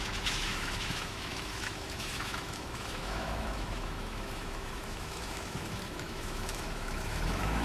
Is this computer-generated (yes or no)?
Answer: yes